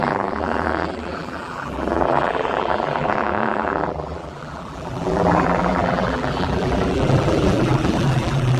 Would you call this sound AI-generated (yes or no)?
yes